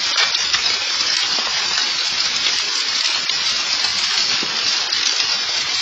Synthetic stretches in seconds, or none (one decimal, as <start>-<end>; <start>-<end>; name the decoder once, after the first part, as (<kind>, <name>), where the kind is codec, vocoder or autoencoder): 0.0-1.8 (vocoder, BigVGAN v2); 3.2-3.9; 5.2-5.8

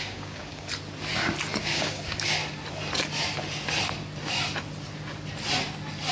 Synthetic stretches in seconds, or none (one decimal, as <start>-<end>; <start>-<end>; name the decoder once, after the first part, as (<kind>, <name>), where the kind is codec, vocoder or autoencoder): 0.0-0.7 (codec, DAC); 1.6-2.4

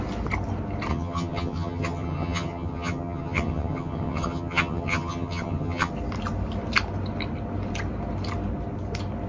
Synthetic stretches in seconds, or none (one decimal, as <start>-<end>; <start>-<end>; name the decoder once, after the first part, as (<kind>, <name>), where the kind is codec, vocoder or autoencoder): 0.9-5.9 (vocoder, HiFi-GAN)